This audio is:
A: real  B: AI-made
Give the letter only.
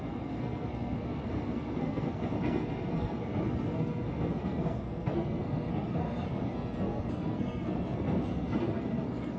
B